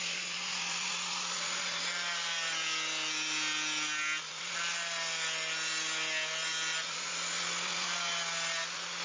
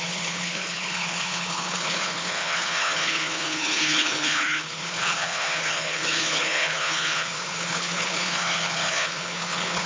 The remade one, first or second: second